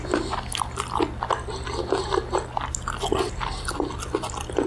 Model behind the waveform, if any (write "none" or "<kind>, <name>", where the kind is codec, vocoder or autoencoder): none